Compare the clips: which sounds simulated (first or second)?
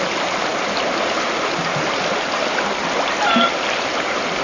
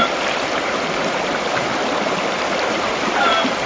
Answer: second